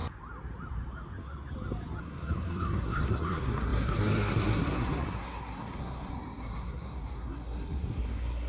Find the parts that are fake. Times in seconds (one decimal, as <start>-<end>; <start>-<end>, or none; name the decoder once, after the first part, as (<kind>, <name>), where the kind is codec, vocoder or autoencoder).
2.0-8.5 (codec, SNAC)